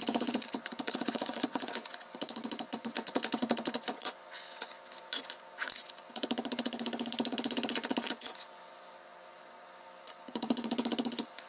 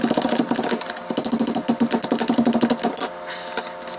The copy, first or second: first